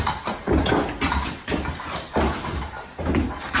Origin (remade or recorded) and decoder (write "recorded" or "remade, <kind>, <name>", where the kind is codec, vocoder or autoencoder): recorded